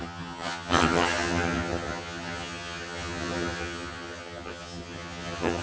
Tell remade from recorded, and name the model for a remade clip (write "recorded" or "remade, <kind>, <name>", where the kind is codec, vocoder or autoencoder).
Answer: remade, vocoder, HiFi-GAN